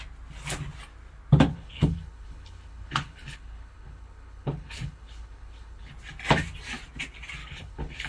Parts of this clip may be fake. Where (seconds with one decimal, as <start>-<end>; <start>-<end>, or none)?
1.5-5.9; 7.4-8.1